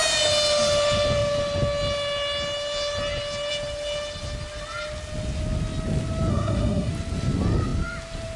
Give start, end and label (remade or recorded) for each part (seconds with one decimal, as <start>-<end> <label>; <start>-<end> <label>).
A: 0.0-6.3 recorded; 6.3-6.9 remade; 6.9-8.4 recorded